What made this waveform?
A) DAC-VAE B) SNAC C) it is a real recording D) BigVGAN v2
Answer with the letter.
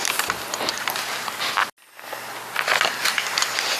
C